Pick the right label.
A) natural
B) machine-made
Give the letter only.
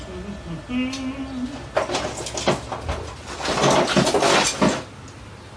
A